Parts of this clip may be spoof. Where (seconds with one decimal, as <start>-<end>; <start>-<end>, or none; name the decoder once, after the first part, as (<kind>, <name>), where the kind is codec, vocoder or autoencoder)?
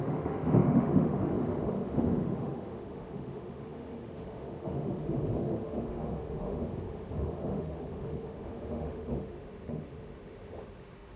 0.0-11.2 (autoencoder, DAC-VAE)